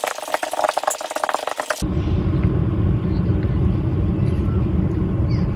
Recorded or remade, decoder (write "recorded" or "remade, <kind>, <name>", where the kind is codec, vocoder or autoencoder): recorded